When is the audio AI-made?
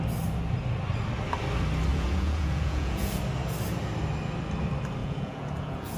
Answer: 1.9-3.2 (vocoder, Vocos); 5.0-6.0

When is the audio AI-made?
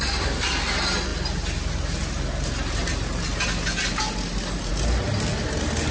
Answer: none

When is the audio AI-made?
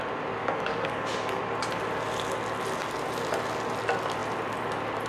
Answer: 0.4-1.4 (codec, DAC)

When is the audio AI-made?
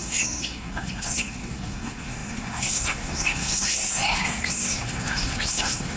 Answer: 0.0-6.0 (codec, SNAC)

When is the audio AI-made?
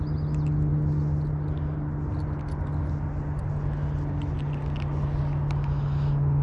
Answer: none